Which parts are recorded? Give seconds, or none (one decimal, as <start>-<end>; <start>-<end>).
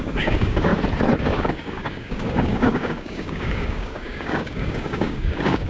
0.7-1.2